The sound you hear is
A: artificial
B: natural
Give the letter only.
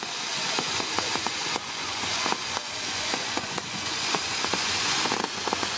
A